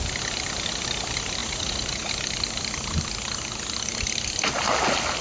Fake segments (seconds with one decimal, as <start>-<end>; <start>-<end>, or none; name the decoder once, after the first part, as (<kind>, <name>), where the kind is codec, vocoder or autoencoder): 1.4-2.1 (vocoder, Vocos)